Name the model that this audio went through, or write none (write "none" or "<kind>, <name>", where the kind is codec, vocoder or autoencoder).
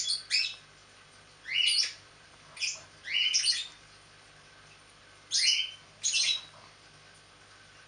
none